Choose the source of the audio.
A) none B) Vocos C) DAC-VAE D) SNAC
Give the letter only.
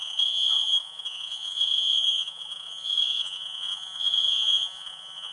B